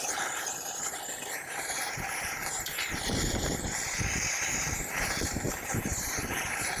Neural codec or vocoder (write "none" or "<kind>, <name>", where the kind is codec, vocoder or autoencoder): vocoder, BigVGAN v2